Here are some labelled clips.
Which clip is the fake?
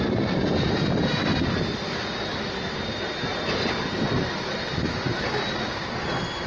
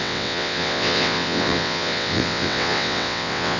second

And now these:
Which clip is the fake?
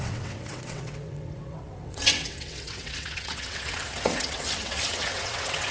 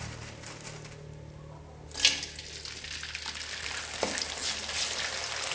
first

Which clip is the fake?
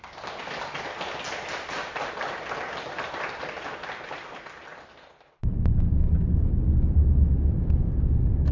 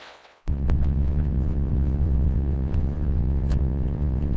second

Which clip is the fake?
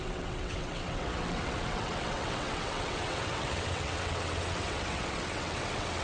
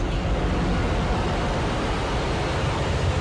first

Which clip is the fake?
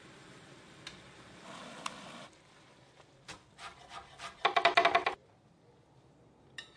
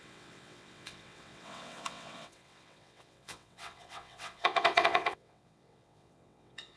second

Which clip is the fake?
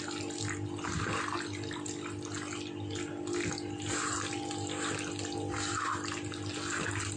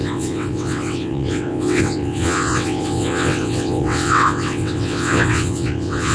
second